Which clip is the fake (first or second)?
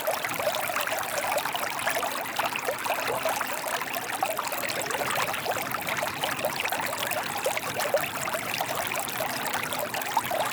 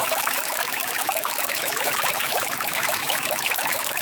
second